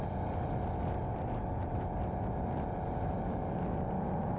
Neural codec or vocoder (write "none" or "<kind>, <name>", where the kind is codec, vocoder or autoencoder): none